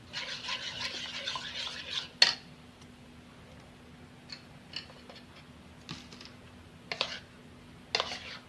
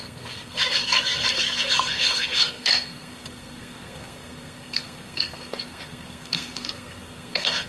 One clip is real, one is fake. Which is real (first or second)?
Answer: first